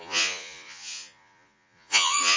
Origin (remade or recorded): remade